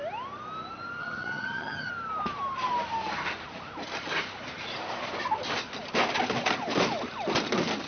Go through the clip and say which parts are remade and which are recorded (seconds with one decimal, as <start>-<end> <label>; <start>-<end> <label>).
0.0-1.0 recorded; 1.0-1.9 remade; 1.9-7.9 recorded